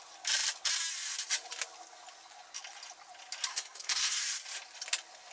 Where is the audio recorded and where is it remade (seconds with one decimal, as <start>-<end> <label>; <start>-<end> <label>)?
0.0-3.5 recorded; 3.5-4.2 remade; 4.2-5.3 recorded